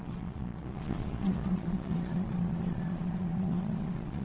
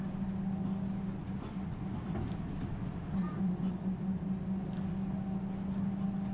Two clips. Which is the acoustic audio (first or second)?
second